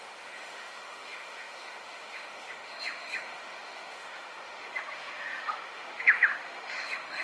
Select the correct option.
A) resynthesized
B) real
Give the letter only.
A